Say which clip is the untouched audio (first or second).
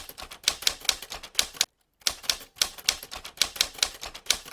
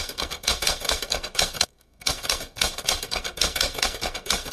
first